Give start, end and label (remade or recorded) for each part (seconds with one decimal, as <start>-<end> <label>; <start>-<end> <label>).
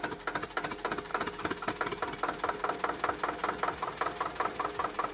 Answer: 0.0-5.1 recorded